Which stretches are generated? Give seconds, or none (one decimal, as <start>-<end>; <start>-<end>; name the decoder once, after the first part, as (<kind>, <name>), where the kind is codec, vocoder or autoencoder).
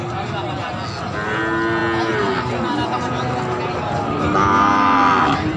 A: none